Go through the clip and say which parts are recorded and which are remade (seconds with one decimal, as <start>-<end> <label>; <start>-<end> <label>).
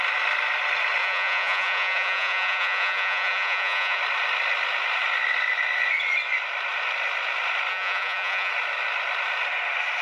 0.0-1.0 recorded; 1.0-4.0 remade; 4.0-7.7 recorded; 7.7-8.5 remade; 8.5-10.0 recorded